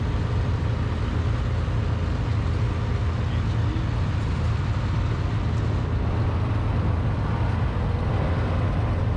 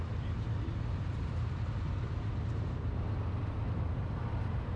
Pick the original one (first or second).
first